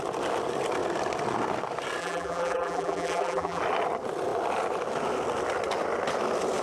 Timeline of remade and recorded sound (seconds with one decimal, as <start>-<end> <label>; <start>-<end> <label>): 0.0-2.0 recorded; 2.0-3.6 remade; 3.6-6.6 recorded